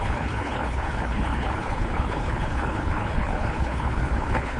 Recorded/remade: remade